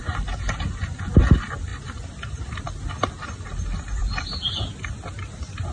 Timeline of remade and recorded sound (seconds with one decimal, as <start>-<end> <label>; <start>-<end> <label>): 0.0-5.7 recorded